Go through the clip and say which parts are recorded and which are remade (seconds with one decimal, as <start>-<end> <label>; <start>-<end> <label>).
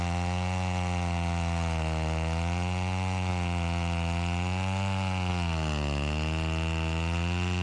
0.0-7.6 recorded